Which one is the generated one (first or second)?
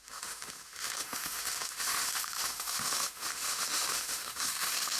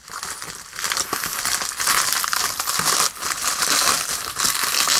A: first